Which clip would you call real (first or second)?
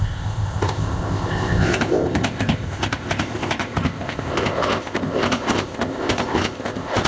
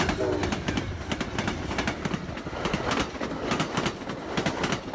second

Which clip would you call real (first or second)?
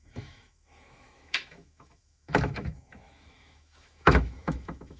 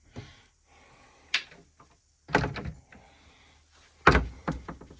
second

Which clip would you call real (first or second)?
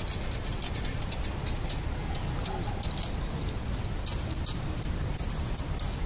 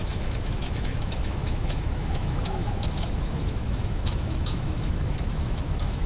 first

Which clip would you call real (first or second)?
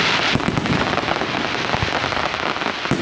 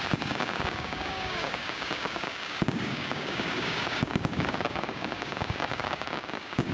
first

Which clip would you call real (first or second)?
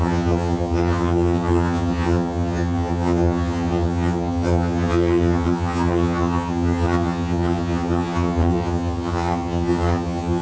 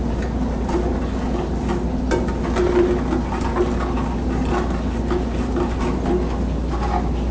second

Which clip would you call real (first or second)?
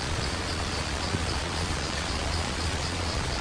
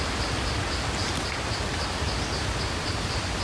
second